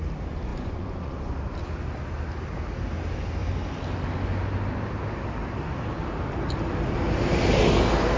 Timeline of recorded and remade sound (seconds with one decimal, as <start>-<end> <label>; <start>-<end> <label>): 0.0-0.5 recorded; 0.5-1.4 remade; 1.4-8.2 recorded